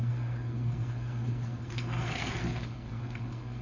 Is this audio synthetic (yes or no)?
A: yes